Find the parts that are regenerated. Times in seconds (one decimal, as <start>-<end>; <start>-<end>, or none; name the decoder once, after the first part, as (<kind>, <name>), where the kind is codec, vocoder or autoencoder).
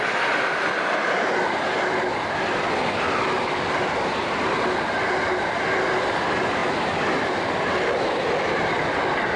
none